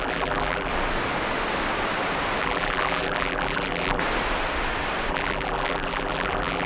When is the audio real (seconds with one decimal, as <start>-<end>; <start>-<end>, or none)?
0.7-2.4; 4.0-5.1